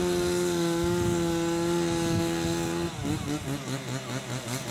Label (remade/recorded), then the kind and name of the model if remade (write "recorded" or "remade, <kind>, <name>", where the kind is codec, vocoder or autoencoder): recorded